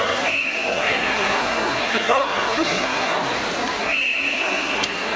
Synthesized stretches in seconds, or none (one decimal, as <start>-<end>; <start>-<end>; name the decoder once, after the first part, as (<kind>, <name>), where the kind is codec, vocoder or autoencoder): 0.0-3.2 (codec, SNAC); 3.8-5.2